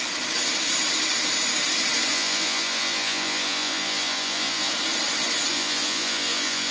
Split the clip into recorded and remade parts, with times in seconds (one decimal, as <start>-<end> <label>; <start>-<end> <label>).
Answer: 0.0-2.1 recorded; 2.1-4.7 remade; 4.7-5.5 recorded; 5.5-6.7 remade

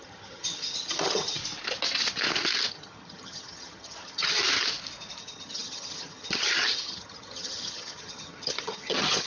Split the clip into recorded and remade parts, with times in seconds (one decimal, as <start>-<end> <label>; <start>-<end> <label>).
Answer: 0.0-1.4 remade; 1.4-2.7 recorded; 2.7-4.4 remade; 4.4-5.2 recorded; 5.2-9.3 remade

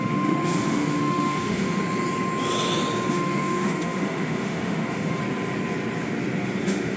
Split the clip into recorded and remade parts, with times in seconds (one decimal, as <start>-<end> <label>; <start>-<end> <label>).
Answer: 0.0-1.8 remade; 1.8-3.1 recorded; 3.1-5.2 remade; 5.2-6.6 recorded; 6.6-7.0 remade

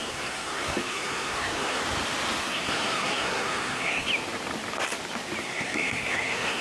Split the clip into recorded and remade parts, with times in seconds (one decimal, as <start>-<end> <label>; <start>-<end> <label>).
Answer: 0.0-1.8 remade; 1.8-2.4 recorded; 2.4-4.1 remade; 4.1-5.4 recorded; 5.4-6.6 remade